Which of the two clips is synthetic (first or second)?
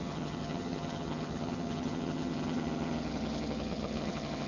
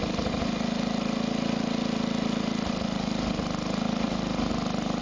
first